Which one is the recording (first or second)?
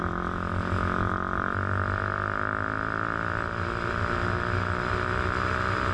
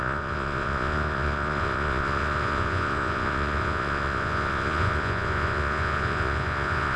first